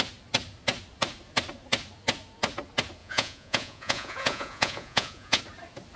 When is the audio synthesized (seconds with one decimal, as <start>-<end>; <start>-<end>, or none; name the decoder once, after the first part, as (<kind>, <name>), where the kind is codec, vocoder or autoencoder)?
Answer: 3.0-5.4 (vocoder, Vocos)